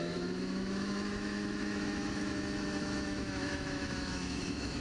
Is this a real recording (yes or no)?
no